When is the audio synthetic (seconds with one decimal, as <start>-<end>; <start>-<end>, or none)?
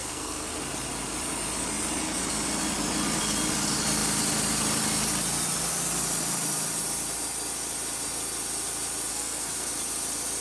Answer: 0.0-0.5; 9.1-9.7